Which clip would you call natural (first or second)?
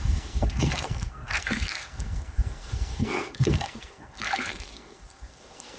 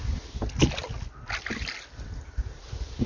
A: second